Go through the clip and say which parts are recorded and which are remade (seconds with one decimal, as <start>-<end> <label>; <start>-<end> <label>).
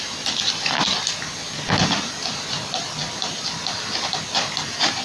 0.0-5.0 recorded